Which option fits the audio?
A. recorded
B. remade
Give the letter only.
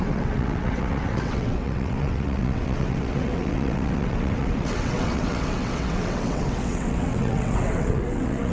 B